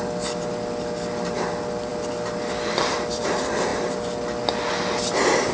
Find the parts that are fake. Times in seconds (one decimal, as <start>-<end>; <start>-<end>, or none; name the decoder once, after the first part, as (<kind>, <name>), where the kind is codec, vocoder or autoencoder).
none